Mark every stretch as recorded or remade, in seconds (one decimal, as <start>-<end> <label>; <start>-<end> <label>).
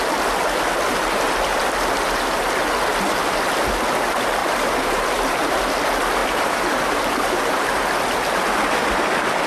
0.0-0.9 recorded; 0.9-1.6 remade; 1.6-4.4 recorded; 4.4-5.6 remade; 5.6-6.2 recorded; 6.2-7.9 remade; 7.9-9.5 recorded